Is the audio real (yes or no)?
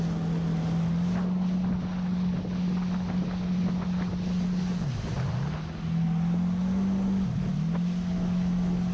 yes